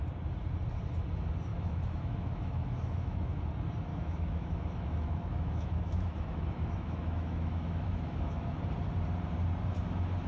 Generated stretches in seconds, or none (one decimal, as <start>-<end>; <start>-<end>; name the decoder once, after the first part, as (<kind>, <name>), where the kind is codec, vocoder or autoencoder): 1.5-3.4 (autoencoder, DAC-VAE); 3.9-8.6